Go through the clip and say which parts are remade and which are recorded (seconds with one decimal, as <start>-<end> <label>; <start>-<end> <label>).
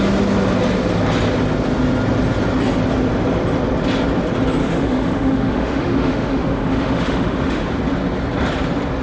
0.0-4.6 recorded; 4.6-7.7 remade; 7.7-9.0 recorded